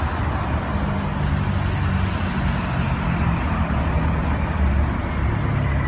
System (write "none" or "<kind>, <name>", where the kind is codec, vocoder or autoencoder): none